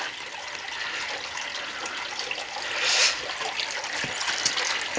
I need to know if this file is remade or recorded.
recorded